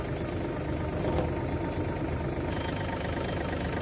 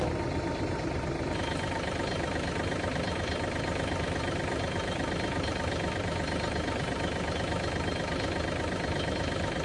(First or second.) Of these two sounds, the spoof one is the second